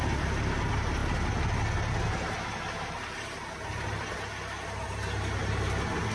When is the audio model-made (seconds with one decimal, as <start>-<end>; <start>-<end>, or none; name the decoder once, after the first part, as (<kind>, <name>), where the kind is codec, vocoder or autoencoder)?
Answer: none